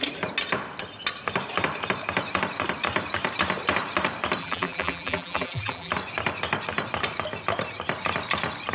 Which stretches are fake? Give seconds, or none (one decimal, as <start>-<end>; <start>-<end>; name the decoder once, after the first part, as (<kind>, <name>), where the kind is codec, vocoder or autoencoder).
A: 4.4-5.9 (vocoder, BigVGAN v2)